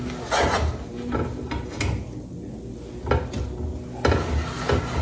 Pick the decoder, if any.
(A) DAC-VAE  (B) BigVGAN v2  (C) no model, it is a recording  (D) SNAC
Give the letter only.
C